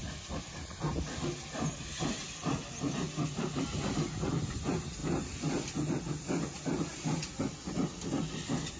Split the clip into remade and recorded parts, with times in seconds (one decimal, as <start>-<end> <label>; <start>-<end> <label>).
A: 0.0-8.8 recorded